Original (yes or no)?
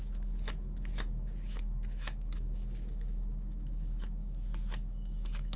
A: no